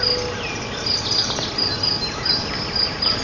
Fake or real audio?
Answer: real